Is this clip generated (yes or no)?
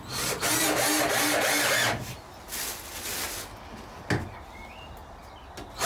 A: no